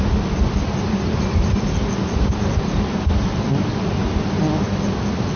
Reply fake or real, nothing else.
real